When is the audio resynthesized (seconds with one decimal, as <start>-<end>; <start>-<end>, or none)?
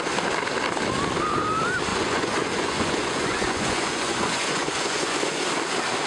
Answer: 1.9-5.4